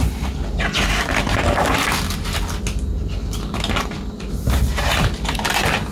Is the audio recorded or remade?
recorded